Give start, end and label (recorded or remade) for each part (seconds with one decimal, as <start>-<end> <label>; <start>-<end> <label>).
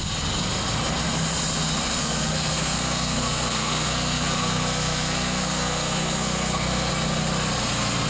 0.0-2.0 recorded; 2.0-6.9 remade; 6.9-8.1 recorded